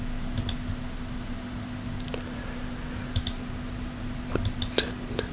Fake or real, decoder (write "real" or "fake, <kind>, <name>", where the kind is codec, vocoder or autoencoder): real